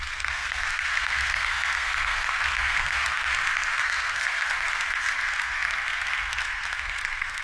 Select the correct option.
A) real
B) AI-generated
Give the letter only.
B